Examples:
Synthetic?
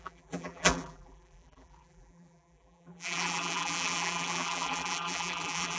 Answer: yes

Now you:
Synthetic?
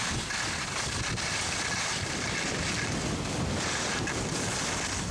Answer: no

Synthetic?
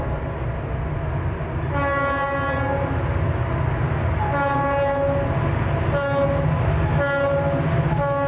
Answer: no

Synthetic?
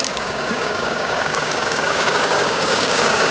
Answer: yes